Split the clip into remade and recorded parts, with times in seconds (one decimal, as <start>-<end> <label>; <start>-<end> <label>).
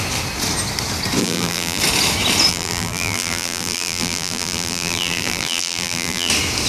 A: 0.0-1.2 recorded; 1.2-1.8 remade; 1.8-2.5 recorded; 2.5-6.3 remade; 6.3-6.7 recorded